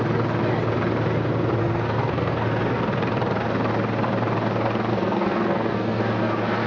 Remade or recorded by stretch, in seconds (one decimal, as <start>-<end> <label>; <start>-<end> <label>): 0.0-1.6 recorded; 1.6-2.8 remade; 2.8-4.9 recorded; 4.9-6.0 remade; 6.0-6.7 recorded